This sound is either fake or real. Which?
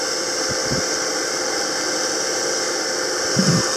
fake